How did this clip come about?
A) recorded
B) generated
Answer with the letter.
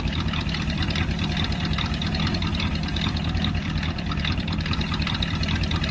B